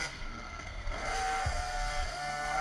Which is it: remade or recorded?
remade